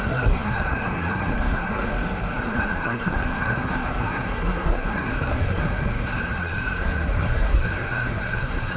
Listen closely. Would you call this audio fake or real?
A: fake